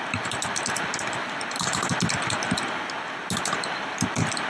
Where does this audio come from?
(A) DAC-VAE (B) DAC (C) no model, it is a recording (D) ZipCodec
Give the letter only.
C